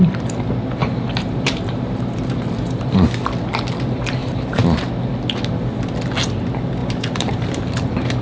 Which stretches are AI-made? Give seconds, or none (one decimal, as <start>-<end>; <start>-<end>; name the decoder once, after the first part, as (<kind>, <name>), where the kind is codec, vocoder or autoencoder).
0.8-2.9 (vocoder, BigVGAN v2); 4.2-4.9; 6.8-7.5